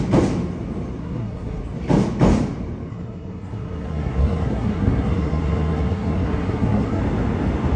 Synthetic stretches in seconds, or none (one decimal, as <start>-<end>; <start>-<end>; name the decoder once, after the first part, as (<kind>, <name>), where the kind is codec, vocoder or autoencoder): 1.0-1.6 (codec, SNAC); 2.9-7.0